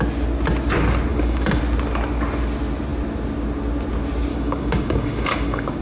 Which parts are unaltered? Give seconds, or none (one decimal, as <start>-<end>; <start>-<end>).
0.0-1.1; 1.6-4.3